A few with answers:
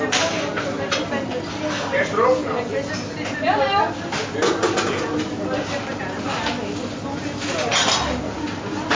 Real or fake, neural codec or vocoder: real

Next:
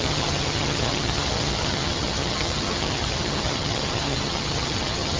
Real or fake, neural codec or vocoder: fake, vocoder, HiFi-GAN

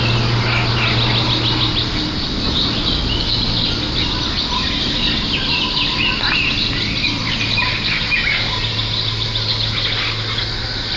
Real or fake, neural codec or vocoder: real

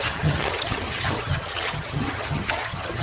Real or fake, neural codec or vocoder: fake, vocoder, HiFi-GAN